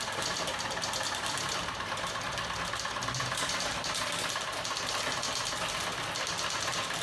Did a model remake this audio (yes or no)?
no